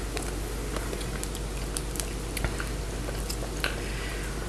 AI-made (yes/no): no